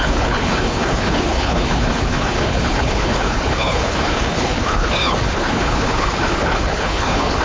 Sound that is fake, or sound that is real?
fake